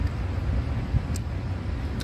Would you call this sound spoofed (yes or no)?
no